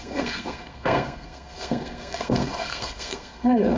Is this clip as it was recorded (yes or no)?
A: no